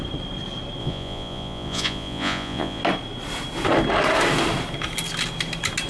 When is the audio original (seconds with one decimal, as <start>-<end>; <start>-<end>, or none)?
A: 0.0-0.8; 2.8-5.9